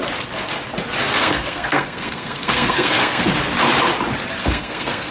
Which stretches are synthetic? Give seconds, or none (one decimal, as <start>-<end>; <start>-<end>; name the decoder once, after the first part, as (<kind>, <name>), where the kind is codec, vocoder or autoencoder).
1.2-3.3 (codec, SNAC); 4.4-5.1